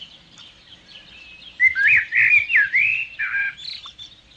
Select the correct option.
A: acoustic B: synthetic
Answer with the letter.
A